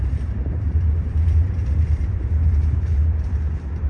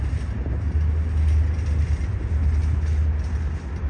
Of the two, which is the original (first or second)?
second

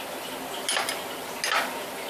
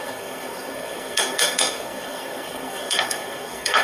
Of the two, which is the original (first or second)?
first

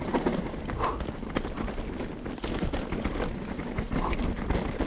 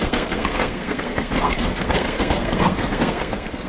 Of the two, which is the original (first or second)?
first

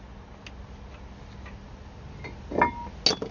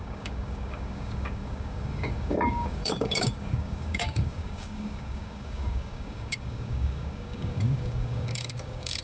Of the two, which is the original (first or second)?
first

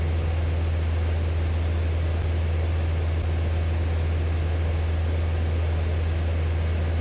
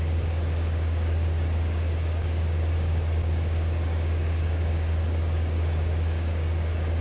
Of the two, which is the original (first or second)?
first